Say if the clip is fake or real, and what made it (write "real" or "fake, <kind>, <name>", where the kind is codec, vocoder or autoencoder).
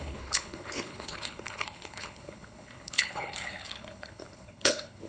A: fake, codec, HILCodec